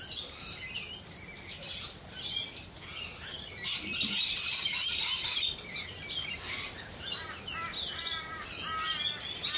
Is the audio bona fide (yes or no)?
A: yes